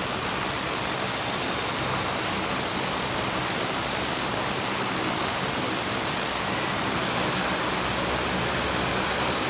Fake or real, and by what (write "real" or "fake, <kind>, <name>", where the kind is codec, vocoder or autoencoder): real